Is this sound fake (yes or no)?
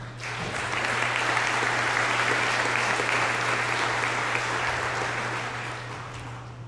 no